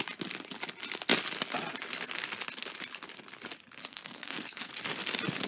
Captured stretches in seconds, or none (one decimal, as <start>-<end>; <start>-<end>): 0.0-3.8; 4.7-5.5